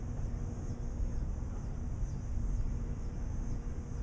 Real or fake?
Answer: real